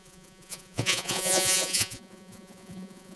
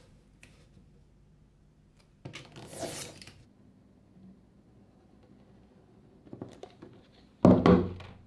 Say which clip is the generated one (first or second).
first